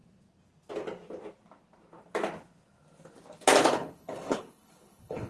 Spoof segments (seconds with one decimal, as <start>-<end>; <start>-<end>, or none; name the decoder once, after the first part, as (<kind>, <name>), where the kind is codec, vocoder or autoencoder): 3.6-5.3 (codec, HILCodec)